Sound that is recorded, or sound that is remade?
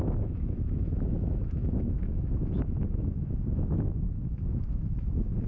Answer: remade